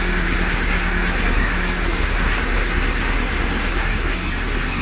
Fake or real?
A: fake